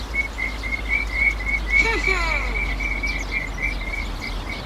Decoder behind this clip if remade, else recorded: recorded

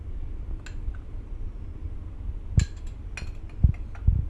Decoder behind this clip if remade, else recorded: recorded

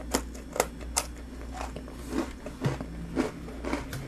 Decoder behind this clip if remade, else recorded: recorded